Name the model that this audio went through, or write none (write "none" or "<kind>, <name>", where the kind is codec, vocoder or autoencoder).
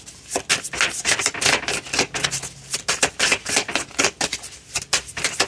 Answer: none